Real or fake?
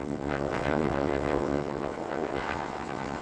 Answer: fake